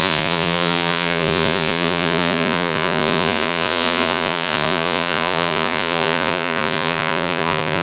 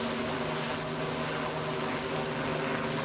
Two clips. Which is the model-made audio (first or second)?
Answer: first